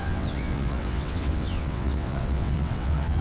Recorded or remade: remade